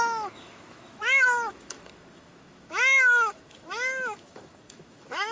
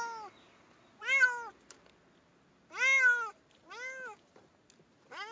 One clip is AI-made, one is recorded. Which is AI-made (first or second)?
first